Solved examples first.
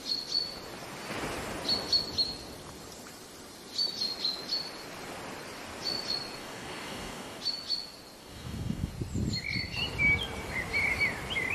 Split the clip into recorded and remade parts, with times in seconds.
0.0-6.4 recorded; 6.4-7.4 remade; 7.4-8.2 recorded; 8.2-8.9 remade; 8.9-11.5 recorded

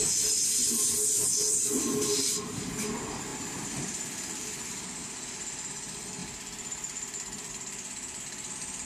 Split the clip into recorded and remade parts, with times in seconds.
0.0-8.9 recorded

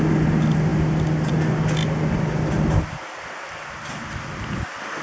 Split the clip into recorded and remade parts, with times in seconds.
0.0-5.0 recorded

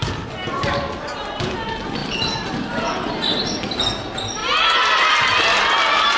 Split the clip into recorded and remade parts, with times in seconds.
0.0-6.2 recorded